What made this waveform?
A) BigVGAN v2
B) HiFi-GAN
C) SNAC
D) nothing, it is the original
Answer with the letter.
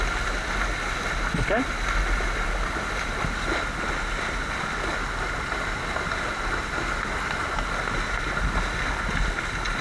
D